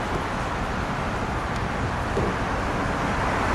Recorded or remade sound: recorded